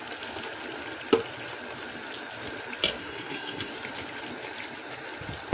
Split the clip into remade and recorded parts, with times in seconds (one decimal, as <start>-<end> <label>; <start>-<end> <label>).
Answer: 0.0-3.0 recorded; 3.0-3.7 remade; 3.7-5.5 recorded